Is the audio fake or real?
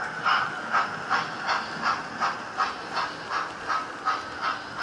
real